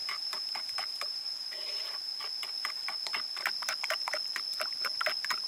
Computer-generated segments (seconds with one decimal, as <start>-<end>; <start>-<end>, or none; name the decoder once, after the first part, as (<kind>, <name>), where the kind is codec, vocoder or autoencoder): 0.0-1.9 (vocoder, BigVGAN v2)